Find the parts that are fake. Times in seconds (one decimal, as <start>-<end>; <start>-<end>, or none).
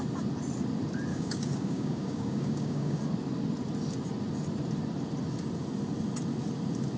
1.1-3.0